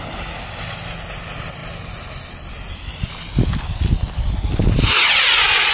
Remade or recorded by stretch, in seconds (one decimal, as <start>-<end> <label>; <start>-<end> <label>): 0.0-5.7 recorded